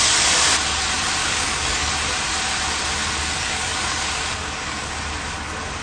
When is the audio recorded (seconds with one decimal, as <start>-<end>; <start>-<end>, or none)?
0.0-1.2; 1.9-3.2; 5.0-5.8